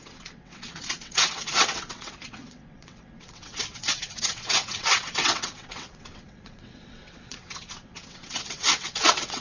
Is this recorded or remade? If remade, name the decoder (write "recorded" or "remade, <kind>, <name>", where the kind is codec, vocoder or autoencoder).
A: remade, vocoder, WaveNeXt